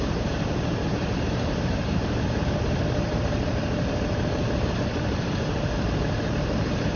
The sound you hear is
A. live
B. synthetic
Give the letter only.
B